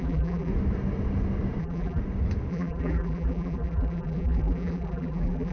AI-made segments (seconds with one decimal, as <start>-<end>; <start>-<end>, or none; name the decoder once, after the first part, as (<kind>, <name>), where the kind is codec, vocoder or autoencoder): 0.0-0.5 (vocoder, BigVGAN v2); 1.6-2.0; 2.5-5.5

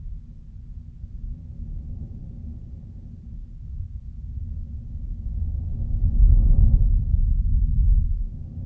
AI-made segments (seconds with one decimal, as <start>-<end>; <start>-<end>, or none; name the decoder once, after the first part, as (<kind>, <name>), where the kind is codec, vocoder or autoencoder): 5.7-6.9 (vocoder, Vocos)

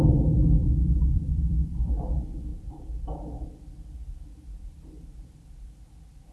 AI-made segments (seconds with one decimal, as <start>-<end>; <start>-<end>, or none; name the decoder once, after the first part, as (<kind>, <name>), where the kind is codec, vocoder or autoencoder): 0.6-1.9 (vocoder, BigVGAN v2); 2.5-3.1

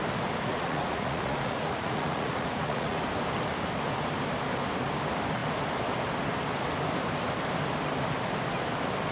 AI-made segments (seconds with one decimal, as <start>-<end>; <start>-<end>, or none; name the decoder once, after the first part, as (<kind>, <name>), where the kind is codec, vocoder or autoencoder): 0.5-3.0 (vocoder, Vocos)